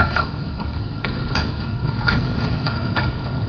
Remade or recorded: remade